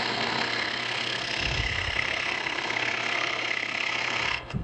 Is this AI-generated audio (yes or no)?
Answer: yes